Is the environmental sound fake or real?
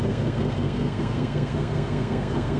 fake